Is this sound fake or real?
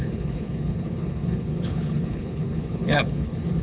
fake